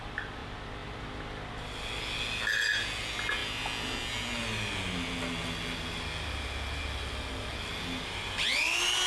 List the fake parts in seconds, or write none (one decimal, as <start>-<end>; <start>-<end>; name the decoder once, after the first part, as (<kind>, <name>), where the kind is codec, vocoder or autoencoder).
none